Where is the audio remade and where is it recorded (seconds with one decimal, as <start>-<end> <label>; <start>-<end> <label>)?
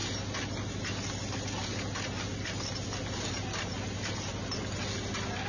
0.0-5.5 recorded